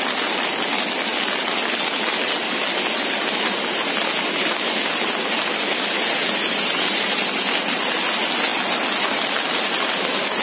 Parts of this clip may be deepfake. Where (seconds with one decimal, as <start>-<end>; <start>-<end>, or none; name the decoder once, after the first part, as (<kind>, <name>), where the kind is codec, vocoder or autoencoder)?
none